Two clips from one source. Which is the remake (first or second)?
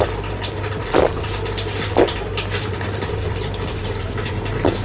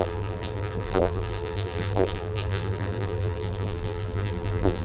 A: second